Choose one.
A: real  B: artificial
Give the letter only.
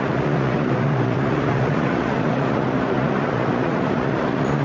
B